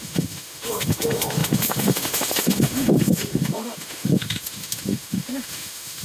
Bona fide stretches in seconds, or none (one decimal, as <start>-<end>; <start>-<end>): none